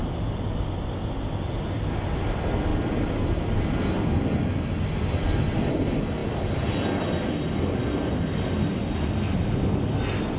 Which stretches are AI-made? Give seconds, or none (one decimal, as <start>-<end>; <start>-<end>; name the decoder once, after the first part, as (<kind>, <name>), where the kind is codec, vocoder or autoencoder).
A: none